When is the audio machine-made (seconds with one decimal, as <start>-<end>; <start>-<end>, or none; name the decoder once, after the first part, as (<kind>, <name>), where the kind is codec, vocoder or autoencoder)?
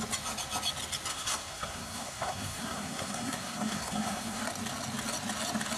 1.1-4.4 (codec, SNAC)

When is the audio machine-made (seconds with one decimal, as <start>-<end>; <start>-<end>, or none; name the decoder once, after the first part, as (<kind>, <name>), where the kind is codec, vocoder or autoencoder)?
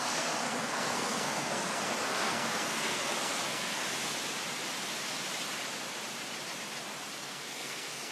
0.0-3.8 (codec, SNAC); 7.2-8.1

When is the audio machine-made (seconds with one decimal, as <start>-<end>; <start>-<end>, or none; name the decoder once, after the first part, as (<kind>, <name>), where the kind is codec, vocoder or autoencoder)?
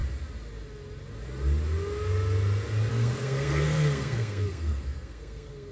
2.9-5.7 (codec, SNAC)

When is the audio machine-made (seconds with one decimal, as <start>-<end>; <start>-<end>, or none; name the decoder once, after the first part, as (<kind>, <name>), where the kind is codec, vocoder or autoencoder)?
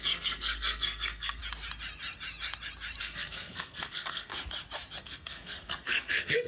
0.0-1.4 (codec, SNAC); 3.0-4.3; 5.0-6.5